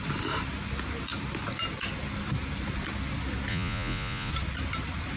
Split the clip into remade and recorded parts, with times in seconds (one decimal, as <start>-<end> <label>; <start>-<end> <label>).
0.0-3.5 recorded; 3.5-4.3 remade; 4.3-5.2 recorded